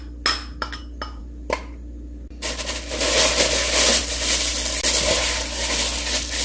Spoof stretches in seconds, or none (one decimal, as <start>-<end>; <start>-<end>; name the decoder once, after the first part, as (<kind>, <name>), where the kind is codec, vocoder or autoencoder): none